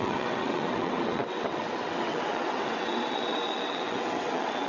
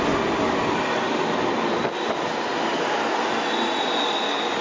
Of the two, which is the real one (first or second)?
second